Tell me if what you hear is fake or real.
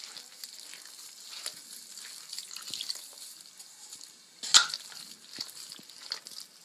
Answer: real